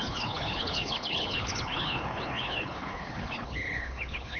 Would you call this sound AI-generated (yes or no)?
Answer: yes